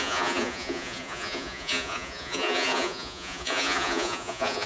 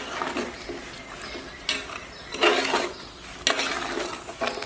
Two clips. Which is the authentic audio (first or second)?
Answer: second